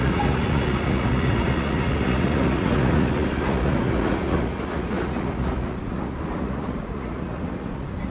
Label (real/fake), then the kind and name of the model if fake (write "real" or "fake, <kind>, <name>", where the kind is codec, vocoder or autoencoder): fake, vocoder, Vocos